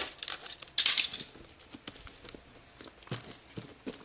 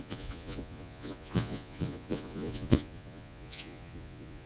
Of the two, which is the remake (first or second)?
second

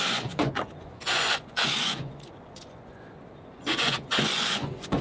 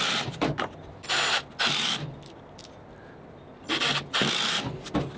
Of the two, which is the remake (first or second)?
first